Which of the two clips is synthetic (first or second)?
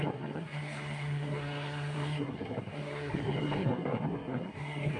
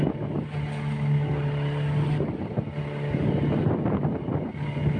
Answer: first